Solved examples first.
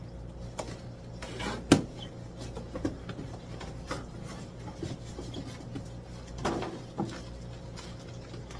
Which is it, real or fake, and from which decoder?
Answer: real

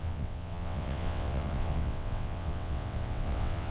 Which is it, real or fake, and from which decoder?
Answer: fake, vocoder, WaveNeXt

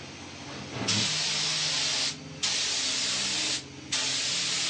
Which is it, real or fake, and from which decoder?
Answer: real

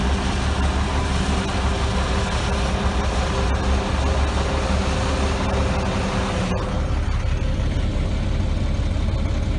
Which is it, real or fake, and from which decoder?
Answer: real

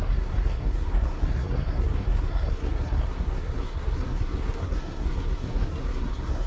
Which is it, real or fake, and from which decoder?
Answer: fake, codec, SNAC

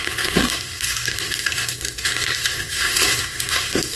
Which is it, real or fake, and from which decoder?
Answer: fake, codec, SNAC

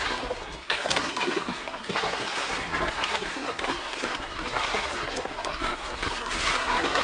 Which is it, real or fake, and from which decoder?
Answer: fake, codec, SNAC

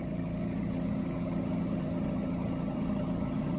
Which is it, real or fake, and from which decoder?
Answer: fake, vocoder, HiFi-GAN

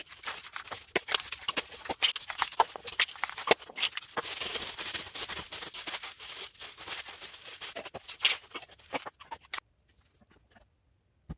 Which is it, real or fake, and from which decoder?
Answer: real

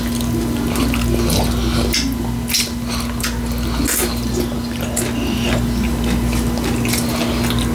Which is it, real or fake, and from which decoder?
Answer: real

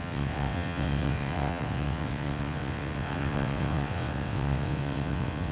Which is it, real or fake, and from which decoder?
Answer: fake, vocoder, WaveNeXt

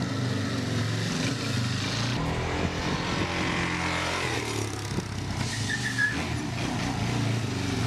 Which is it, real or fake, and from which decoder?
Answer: real